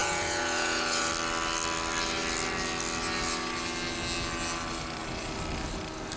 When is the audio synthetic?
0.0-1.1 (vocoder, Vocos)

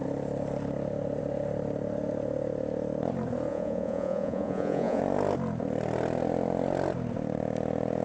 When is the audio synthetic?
3.5-5.0 (vocoder, Vocos)

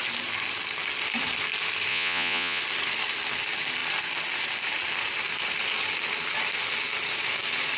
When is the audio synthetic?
1.9-2.6 (vocoder, Vocos)

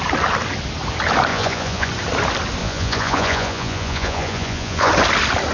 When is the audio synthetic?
1.3-1.9 (vocoder, Vocos); 2.6-4.9

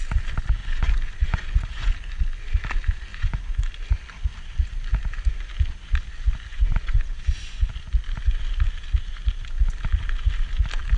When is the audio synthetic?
0.6-1.9 (vocoder, Vocos); 3.1-3.6; 6.5-7.7

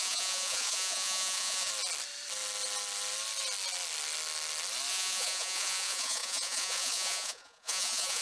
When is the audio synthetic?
0.0-1.7 (vocoder, Vocos); 4.9-8.2